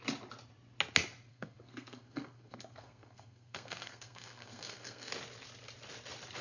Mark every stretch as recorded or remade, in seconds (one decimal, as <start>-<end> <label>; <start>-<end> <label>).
0.0-1.3 recorded; 1.3-5.1 remade; 5.1-6.4 recorded